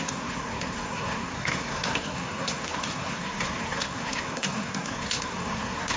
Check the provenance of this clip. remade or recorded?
remade